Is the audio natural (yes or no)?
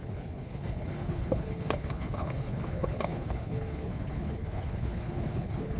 no